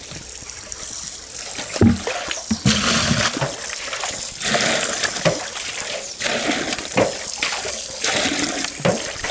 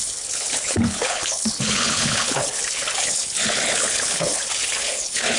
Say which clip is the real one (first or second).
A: first